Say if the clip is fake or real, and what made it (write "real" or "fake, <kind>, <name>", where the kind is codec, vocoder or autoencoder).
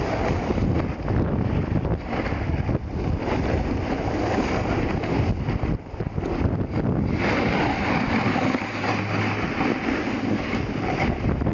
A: real